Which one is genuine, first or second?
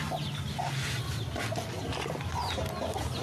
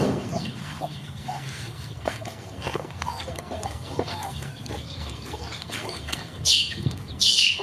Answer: first